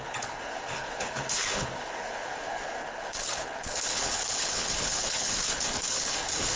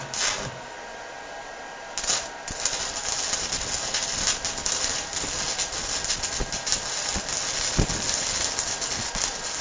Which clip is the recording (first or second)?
second